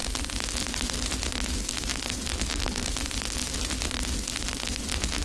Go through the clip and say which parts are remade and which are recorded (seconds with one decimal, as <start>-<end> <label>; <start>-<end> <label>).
0.0-5.2 recorded